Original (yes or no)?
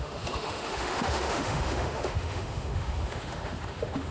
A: no